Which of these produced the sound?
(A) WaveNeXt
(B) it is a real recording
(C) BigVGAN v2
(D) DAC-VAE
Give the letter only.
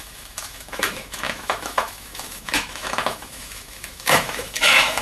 D